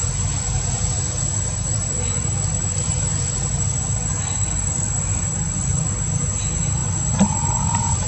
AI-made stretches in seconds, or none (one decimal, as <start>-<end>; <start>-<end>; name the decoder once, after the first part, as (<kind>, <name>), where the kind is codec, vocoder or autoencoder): none